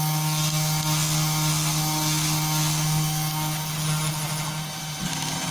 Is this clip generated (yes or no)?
no